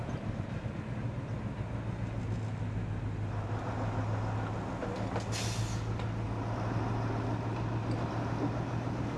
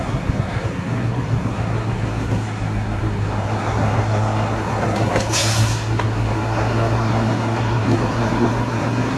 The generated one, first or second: second